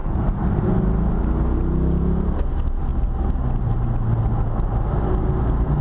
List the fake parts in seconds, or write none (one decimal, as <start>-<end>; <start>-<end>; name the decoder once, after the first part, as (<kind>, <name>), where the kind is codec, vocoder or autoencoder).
none